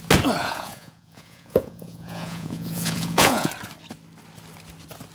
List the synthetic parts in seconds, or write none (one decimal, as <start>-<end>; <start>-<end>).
0.4-3.5